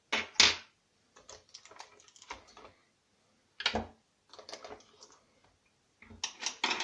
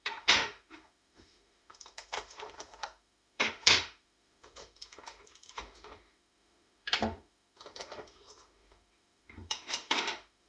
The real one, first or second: first